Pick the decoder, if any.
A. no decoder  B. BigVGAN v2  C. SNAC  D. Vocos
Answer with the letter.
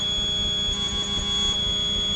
A